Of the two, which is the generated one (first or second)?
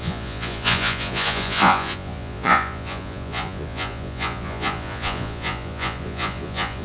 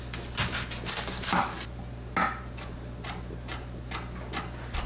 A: first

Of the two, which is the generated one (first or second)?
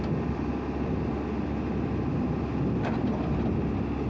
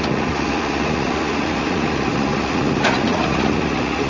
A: second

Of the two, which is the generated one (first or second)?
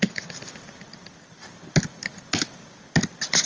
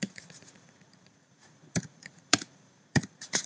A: second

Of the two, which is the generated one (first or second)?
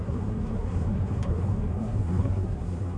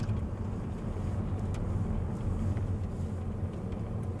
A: first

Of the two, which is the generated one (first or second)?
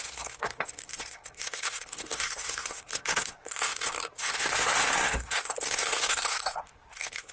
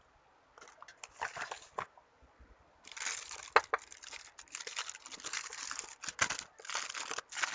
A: first